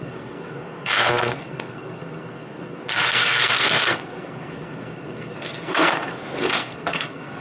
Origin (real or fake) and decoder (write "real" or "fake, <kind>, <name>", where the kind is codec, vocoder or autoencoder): fake, codec, SNAC